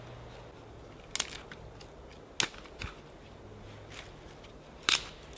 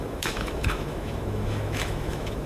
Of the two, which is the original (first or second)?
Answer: first